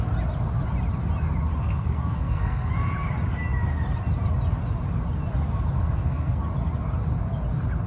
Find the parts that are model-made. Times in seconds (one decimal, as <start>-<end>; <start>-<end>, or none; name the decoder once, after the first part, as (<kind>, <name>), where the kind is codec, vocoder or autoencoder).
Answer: 1.6-2.7 (codec, SNAC); 5.8-6.4